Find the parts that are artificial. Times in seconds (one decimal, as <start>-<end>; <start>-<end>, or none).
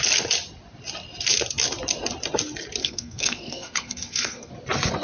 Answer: 2.8-4.5